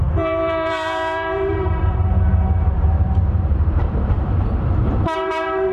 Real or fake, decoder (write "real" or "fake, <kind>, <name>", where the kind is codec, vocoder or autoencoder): fake, vocoder, BigVGAN v2